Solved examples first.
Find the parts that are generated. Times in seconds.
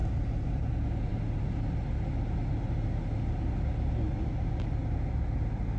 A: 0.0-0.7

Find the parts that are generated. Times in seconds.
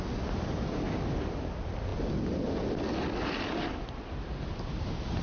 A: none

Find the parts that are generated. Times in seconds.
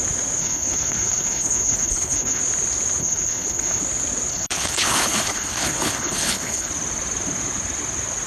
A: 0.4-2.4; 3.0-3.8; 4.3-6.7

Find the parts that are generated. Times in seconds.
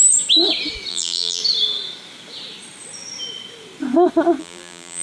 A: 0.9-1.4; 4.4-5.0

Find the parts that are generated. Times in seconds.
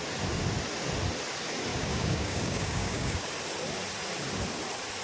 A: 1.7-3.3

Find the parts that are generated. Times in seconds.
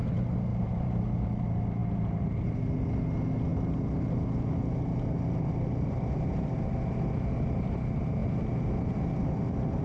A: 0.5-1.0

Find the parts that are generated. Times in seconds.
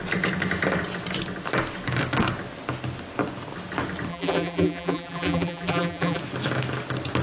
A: 4.1-6.2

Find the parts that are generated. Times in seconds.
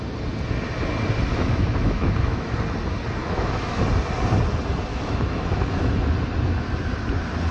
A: 1.3-2.5; 3.2-3.8; 4.9-5.9